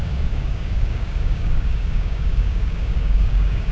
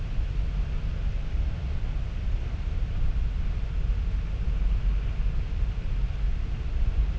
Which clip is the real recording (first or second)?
second